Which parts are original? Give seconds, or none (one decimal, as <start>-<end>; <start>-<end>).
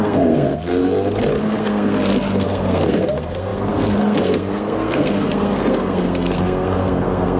0.8-1.4